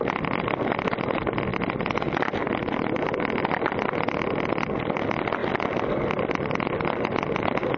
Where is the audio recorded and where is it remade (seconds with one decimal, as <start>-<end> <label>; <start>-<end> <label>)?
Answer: 0.0-7.8 recorded